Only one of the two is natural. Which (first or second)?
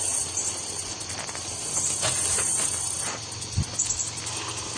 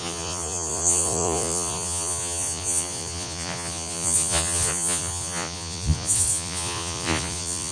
first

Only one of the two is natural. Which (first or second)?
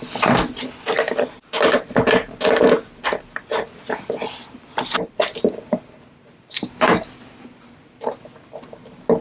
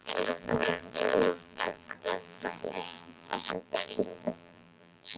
first